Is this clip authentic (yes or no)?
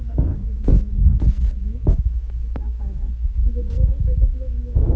no